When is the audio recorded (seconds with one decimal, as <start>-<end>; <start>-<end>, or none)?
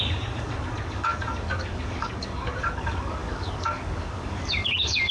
none